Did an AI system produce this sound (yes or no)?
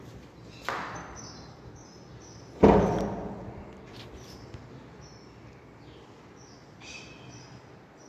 no